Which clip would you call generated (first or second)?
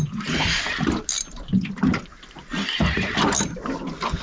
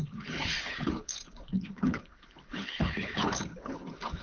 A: second